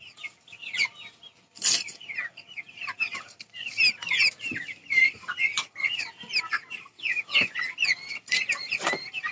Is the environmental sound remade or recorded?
remade